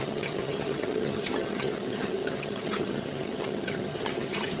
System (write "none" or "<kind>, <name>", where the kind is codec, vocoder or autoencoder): vocoder, HiFi-GAN